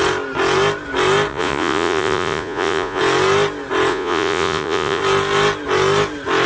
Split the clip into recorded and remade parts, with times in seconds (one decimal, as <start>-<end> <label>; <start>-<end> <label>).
0.0-1.3 recorded; 1.3-3.0 remade; 3.0-3.9 recorded; 3.9-5.0 remade; 5.0-6.5 recorded